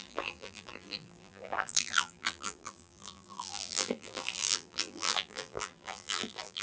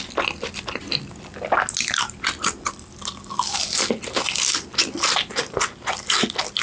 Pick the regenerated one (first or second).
first